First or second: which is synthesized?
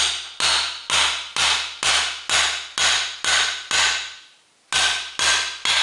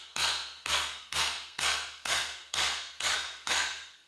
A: second